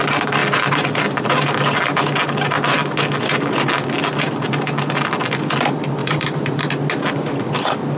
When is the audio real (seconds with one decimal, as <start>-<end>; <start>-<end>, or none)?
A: 0.0-6.0; 6.7-8.0